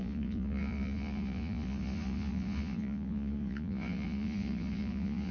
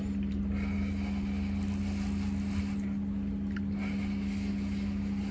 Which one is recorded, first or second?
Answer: second